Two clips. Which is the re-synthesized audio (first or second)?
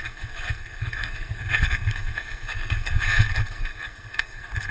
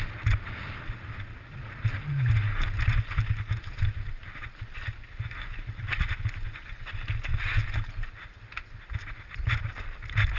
first